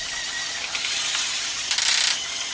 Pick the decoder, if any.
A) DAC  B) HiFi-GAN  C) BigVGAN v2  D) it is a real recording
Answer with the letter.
D